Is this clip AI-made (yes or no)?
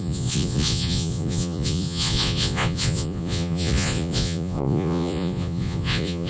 yes